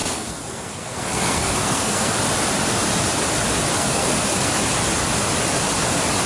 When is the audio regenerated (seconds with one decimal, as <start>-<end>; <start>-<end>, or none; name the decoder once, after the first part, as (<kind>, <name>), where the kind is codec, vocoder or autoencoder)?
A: 0.0-2.1 (codec, SNAC); 3.7-4.5